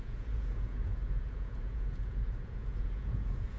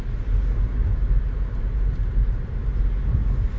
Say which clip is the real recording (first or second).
second